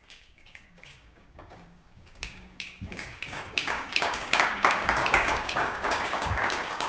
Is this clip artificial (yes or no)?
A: yes